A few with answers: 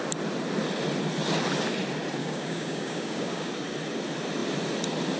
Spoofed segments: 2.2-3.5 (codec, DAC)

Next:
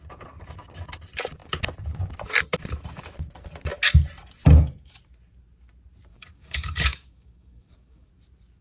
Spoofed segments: 6.1-8.1 (codec, DAC)

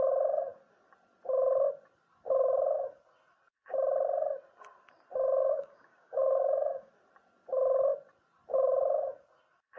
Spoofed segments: 5.4-6.9 (codec, DAC)

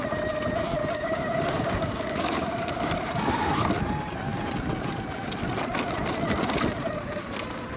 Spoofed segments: 0.8-2.9 (codec, DAC)